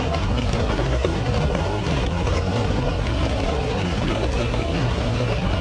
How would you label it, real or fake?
fake